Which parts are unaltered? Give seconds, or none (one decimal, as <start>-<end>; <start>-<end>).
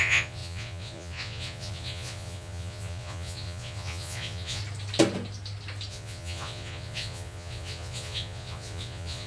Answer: 4.6-5.9